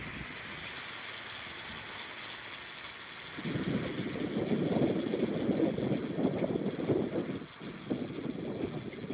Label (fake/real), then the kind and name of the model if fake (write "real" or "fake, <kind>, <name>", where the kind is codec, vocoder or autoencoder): real